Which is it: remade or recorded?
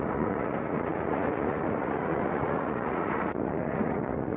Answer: remade